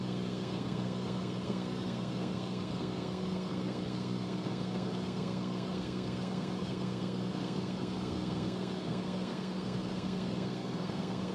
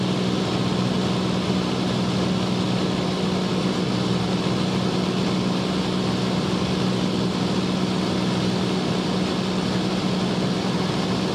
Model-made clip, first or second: first